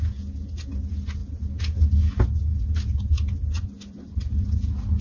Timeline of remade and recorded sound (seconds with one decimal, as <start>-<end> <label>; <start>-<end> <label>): 0.0-5.0 recorded